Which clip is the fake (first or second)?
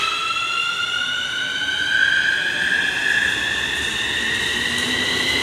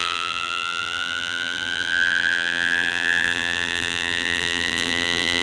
second